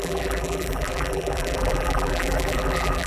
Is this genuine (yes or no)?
no